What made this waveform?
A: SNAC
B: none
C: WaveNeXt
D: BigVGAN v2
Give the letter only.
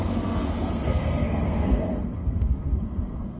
A